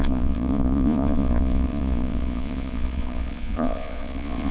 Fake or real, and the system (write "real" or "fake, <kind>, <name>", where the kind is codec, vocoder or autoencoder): fake, vocoder, Vocos